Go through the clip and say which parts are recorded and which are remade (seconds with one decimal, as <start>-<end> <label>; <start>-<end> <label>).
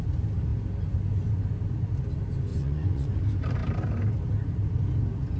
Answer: 0.0-2.5 recorded; 2.5-3.2 remade; 3.2-5.4 recorded